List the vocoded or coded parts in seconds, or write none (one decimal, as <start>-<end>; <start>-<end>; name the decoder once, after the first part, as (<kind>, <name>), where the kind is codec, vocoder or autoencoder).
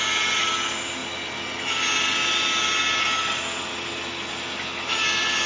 none